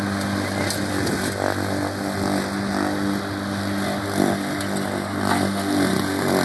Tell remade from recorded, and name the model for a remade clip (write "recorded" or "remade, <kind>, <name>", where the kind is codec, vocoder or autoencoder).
recorded